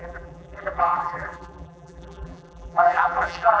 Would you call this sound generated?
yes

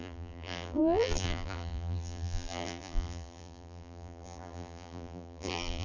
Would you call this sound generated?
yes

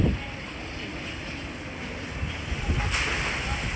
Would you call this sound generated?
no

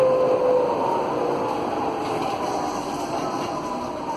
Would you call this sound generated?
no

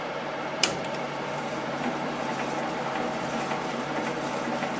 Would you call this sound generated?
yes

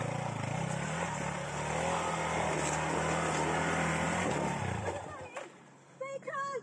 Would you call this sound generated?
no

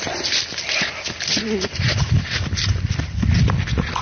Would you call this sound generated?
no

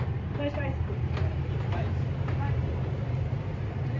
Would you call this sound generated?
yes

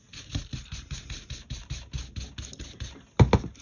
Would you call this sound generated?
no